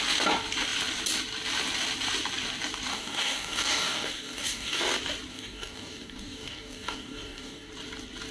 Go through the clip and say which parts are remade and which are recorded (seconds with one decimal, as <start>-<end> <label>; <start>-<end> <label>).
0.0-2.9 recorded; 2.9-4.8 remade; 4.8-5.3 recorded; 5.3-7.7 remade; 7.7-8.3 recorded